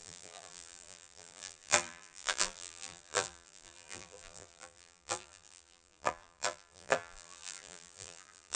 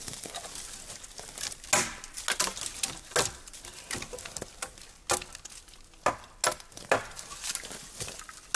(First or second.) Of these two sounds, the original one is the second